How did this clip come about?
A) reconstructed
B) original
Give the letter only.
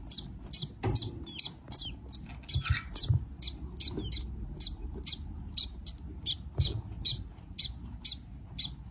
B